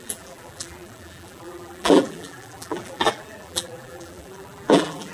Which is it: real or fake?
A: fake